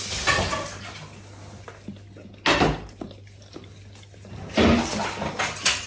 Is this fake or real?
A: real